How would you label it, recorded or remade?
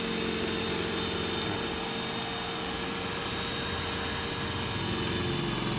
recorded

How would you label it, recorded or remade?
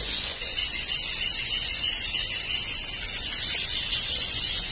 remade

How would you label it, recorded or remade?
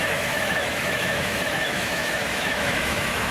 remade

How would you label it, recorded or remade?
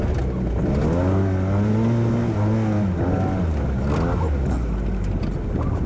recorded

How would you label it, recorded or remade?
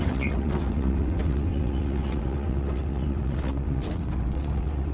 remade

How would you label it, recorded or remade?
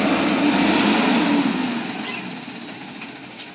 recorded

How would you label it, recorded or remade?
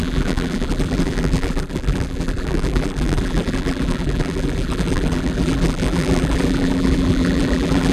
remade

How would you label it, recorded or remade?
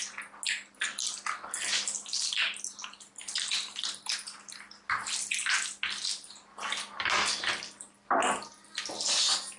recorded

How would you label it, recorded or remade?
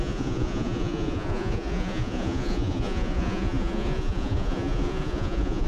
remade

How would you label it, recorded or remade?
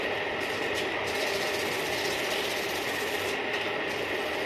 recorded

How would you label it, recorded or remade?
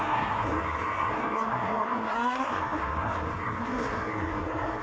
remade